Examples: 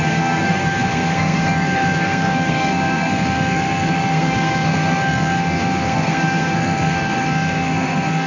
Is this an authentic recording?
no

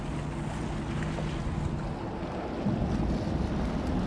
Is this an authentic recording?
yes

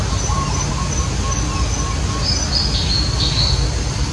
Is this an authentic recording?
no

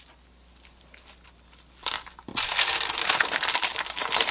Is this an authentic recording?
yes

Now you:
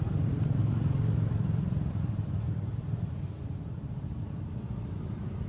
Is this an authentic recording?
no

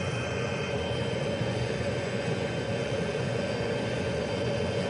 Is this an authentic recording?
no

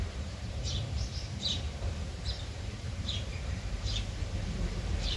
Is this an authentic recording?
no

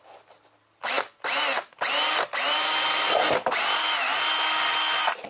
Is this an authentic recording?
yes